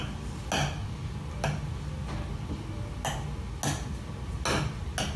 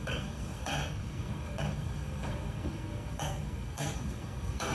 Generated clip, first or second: second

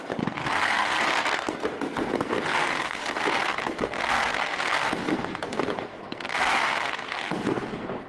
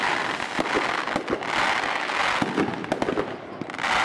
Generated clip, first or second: first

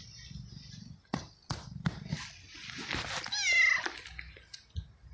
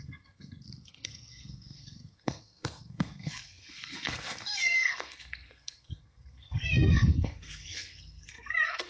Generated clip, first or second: second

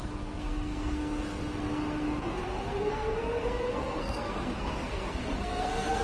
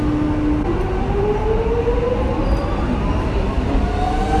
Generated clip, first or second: first